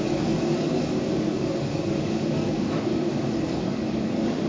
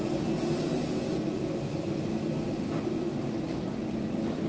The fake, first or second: first